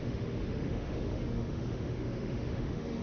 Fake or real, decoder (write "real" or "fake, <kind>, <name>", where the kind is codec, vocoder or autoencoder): fake, autoencoder, DAC-VAE